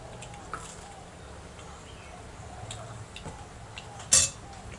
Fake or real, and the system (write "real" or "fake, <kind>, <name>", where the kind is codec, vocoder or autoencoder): real